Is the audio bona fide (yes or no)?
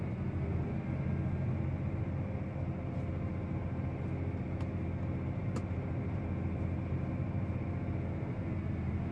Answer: yes